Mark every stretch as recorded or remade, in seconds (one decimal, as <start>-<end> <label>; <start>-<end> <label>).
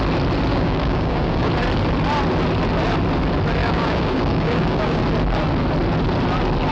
0.0-0.5 recorded; 0.5-1.5 remade; 1.5-3.6 recorded; 3.6-5.0 remade; 5.0-6.7 recorded